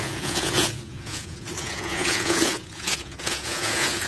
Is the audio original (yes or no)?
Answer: no